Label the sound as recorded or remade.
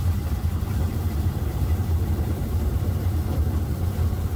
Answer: remade